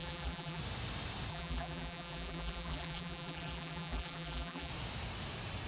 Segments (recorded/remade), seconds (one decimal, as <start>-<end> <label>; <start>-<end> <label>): 0.0-0.6 remade; 0.6-1.3 recorded; 1.3-4.7 remade; 4.7-5.7 recorded